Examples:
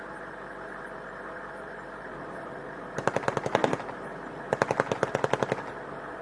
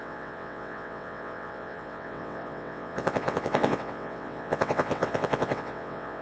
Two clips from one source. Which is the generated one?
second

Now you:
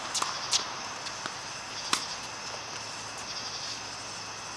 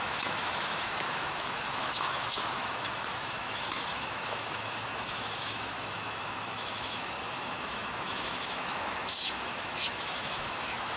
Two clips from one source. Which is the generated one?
second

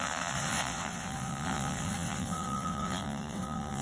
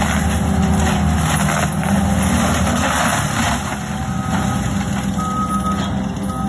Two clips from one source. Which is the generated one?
first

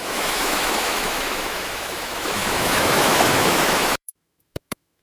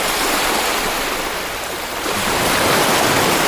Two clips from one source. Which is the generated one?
first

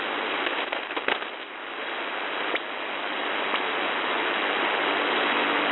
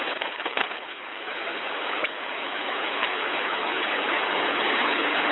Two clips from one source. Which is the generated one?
second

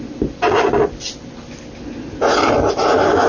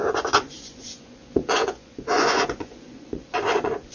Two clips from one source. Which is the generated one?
second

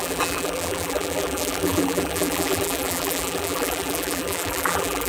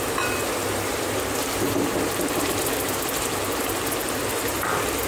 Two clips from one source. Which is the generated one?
first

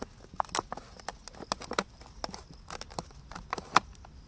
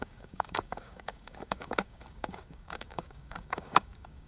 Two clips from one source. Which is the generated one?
second